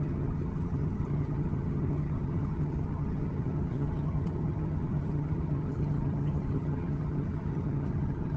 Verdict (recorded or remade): remade